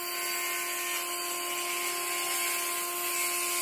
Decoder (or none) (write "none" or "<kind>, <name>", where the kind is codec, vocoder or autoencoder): none